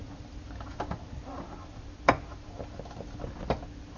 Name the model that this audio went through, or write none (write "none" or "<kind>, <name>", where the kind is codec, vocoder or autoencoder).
none